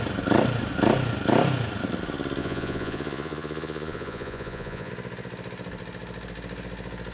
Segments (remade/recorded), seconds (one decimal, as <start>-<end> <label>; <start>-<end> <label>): 0.0-2.4 recorded; 2.4-4.9 remade; 4.9-7.1 recorded